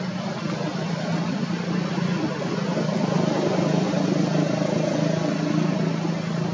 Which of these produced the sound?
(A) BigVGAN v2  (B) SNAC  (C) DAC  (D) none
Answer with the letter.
D